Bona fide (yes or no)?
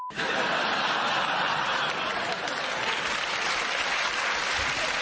yes